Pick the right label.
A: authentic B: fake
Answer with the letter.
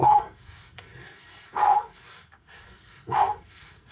B